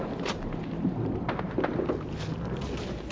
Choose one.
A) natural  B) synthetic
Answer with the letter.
A